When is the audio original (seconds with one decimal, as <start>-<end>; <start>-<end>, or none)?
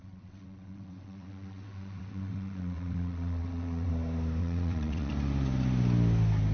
3.9-4.4; 5.1-6.5